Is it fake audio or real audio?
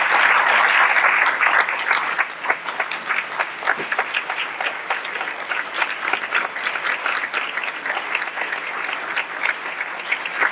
real